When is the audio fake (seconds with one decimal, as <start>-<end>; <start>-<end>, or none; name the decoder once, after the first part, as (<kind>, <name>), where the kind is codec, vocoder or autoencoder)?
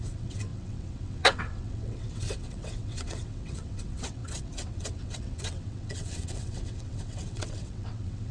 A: 0.0-8.3 (vocoder, WaveNeXt)